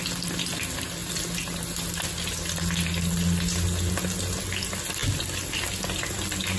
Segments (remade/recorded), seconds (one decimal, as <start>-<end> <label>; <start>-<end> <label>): 0.0-6.6 recorded